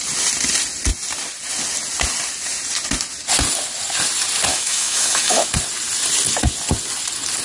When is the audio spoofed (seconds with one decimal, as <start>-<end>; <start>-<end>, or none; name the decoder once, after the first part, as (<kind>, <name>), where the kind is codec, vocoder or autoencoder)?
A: 4.5-5.5 (autoencoder, DAC-VAE)